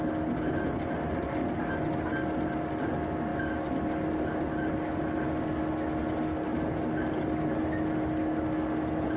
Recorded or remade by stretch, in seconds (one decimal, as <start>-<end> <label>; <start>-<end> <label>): 0.0-9.2 recorded